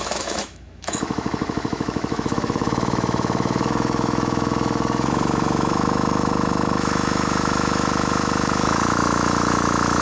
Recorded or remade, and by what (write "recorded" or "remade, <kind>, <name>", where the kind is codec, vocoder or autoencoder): remade, autoencoder, DAC-VAE